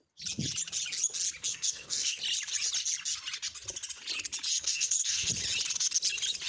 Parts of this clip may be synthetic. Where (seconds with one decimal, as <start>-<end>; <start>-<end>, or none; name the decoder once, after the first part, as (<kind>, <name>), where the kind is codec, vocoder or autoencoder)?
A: 1.5-2.2 (codec, SNAC); 4.5-5.3